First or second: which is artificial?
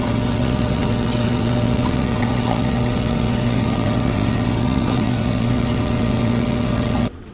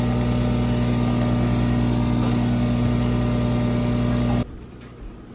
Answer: first